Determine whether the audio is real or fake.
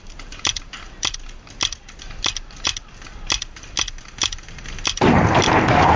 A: real